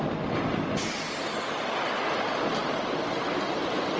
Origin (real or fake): real